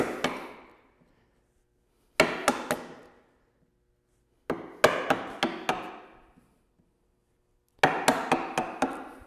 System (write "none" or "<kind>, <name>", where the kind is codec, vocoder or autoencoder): none